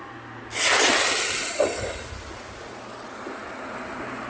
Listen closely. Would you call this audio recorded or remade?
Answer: recorded